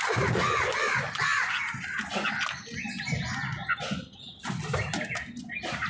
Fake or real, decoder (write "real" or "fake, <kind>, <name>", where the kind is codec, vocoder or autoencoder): real